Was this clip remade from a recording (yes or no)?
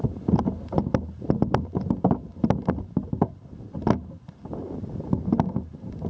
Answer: no